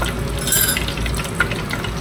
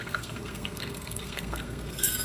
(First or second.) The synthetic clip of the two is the second